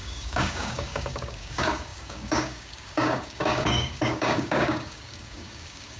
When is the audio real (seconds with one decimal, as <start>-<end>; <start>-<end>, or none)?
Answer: none